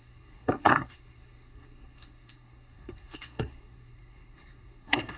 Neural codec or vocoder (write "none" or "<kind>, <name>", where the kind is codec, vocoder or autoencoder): codec, SNAC